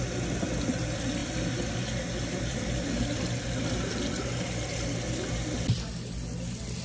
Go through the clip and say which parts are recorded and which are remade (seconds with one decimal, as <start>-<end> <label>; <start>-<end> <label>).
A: 0.0-6.8 recorded